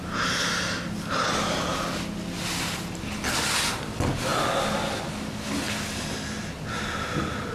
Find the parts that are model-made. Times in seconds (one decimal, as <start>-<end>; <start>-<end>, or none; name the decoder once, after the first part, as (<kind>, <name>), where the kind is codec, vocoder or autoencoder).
none